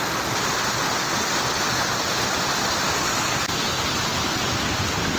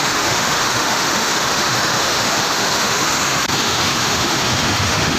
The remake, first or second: second